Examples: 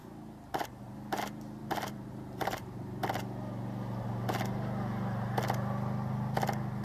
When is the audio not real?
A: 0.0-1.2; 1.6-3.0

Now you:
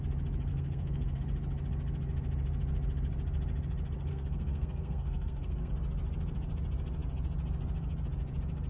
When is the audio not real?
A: 0.5-1.2; 4.1-5.7

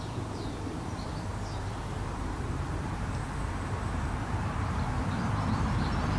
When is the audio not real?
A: 0.0-1.3; 1.8-6.2

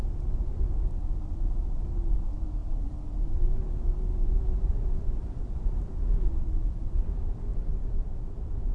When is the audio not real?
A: none

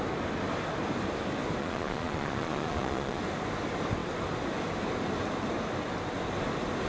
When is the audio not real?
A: 1.6-3.2

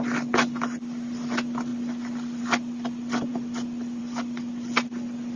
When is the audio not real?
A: none